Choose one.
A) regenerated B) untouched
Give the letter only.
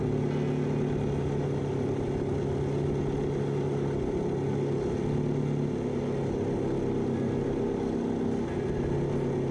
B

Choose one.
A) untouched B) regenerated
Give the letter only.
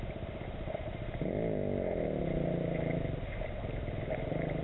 A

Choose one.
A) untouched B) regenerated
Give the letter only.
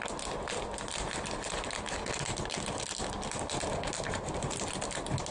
A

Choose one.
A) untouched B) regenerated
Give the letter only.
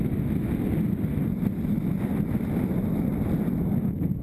A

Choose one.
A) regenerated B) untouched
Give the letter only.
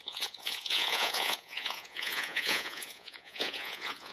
A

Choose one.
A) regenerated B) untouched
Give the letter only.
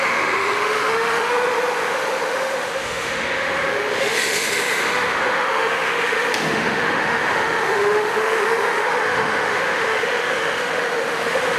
A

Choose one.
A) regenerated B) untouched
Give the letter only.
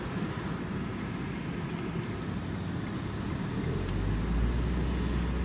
B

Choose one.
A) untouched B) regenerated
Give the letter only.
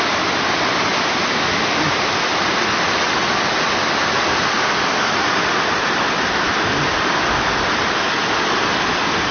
A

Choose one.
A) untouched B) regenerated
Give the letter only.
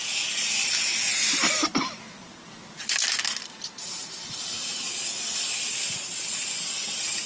A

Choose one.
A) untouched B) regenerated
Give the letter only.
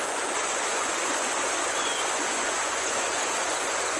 B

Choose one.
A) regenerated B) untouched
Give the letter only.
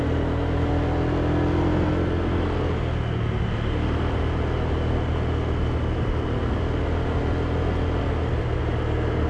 B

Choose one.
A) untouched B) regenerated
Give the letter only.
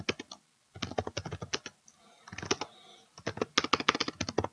A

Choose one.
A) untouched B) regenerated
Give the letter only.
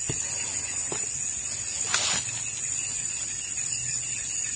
A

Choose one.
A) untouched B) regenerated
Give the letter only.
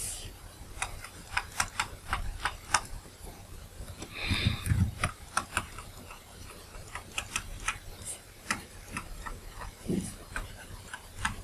B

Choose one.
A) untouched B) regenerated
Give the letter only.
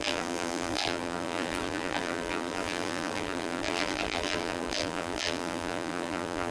B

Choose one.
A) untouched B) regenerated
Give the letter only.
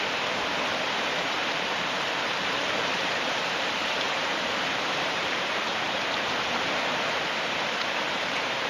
B